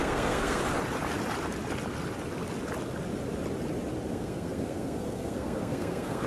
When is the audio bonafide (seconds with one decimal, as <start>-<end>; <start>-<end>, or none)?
0.6-4.1